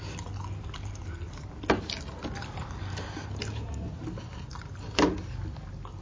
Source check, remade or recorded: recorded